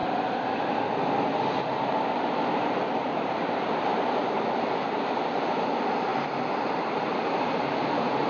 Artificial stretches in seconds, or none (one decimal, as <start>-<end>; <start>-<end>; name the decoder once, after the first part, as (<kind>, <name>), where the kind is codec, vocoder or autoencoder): 1.8-6.1 (vocoder, BigVGAN v2); 6.7-8.3